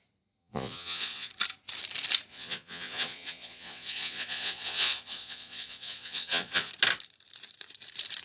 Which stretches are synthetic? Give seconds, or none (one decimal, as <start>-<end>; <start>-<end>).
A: 0.4-1.3; 2.3-6.7